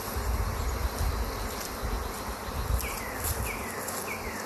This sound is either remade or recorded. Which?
recorded